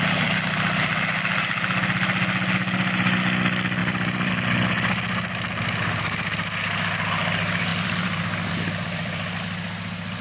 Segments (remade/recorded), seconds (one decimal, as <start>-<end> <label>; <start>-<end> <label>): 0.0-3.8 recorded; 3.8-4.3 remade; 4.3-7.7 recorded; 7.7-9.4 remade; 9.4-10.2 recorded